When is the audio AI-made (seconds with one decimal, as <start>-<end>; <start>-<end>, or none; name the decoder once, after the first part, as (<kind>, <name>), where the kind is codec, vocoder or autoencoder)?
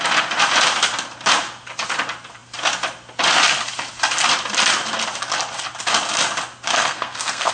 6.7-7.5 (codec, SNAC)